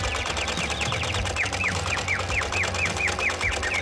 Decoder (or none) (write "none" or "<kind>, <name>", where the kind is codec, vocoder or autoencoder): none